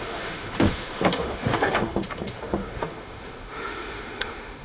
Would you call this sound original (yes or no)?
no